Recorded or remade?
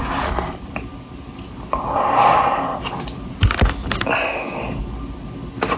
recorded